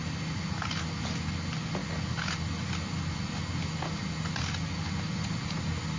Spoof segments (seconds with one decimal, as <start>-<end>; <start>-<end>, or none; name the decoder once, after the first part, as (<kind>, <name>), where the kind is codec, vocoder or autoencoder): none